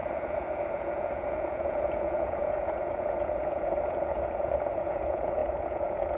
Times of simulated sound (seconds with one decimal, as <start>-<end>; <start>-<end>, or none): 0.0-6.2